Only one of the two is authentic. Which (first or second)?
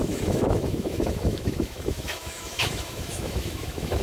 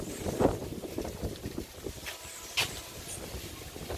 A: second